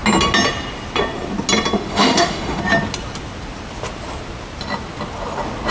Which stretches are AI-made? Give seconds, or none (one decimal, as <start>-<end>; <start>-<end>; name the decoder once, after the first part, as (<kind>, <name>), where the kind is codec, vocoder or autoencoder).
1.9-2.6 (autoencoder, DAC-VAE)